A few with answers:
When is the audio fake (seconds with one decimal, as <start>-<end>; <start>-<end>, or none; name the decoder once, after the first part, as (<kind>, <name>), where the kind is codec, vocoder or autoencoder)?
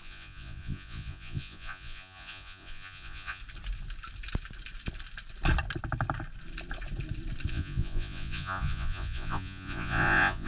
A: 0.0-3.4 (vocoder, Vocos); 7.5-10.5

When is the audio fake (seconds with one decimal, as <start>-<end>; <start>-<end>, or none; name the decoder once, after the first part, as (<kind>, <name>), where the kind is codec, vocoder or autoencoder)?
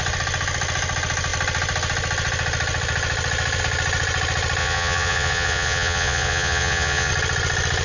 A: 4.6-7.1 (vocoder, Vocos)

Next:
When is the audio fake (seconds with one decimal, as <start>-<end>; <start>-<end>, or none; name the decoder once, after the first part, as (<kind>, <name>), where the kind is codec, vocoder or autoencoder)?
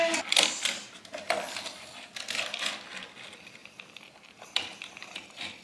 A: 3.6-5.6 (vocoder, BigVGAN v2)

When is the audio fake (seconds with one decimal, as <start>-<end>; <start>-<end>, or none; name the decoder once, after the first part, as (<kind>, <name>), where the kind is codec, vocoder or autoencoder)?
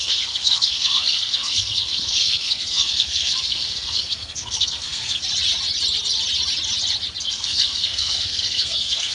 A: 0.0-5.2 (codec, SNAC); 7.2-9.1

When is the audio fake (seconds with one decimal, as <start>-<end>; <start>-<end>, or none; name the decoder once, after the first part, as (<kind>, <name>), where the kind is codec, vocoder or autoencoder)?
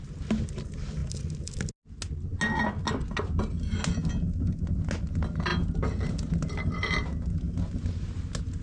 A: none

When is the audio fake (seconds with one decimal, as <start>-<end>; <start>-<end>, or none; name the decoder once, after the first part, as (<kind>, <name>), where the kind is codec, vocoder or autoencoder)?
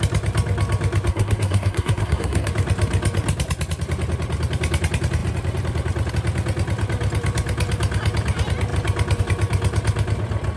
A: 1.1-2.5 (codec, SNAC)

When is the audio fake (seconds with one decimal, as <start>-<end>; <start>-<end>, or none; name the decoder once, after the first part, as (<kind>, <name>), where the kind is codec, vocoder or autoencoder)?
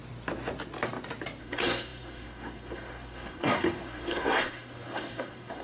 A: 1.4-5.6 (codec, SNAC)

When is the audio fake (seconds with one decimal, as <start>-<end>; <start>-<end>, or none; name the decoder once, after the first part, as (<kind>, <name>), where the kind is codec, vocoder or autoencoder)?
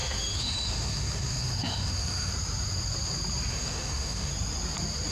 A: 0.0-2.3 (autoencoder, DAC-VAE); 3.5-4.3